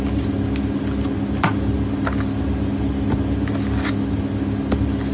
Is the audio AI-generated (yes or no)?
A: no